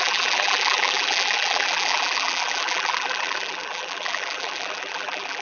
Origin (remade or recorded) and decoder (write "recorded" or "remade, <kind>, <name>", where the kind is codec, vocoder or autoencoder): remade, vocoder, BigVGAN v2